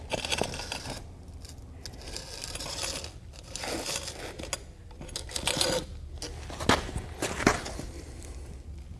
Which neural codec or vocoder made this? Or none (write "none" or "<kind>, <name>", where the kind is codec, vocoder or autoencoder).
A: none